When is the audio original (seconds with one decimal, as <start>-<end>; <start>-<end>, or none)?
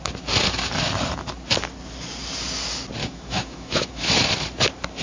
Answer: 0.0-3.0; 4.1-5.0